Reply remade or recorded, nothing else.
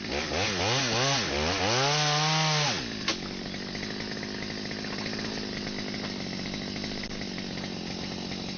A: recorded